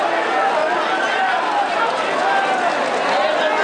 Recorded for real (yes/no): yes